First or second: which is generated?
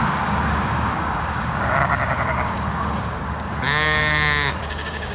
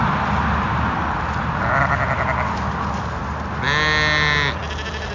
first